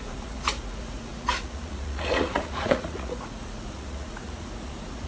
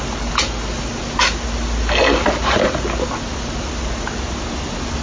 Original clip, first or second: second